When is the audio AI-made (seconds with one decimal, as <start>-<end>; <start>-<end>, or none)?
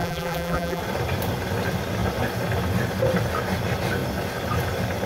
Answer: 0.0-0.8